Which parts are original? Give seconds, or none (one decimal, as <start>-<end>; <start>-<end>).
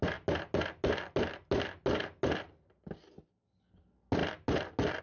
0.0-5.0